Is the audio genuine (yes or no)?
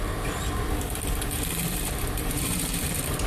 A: no